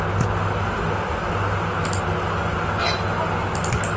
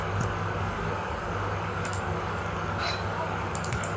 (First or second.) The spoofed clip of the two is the second